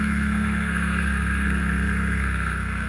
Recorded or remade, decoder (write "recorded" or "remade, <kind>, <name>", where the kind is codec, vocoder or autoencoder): remade, codec, SNAC